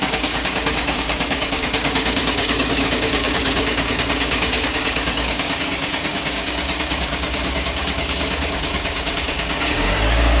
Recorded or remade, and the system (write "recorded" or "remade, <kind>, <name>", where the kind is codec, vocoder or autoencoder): remade, codec, DAC